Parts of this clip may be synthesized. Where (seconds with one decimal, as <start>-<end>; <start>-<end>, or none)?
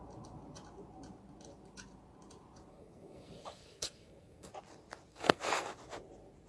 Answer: 2.7-4.5; 5.1-5.7